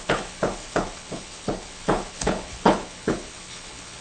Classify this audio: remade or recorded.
remade